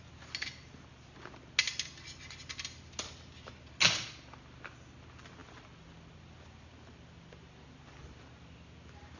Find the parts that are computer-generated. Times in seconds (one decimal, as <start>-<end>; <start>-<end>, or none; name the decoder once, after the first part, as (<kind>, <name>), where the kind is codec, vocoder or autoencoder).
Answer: none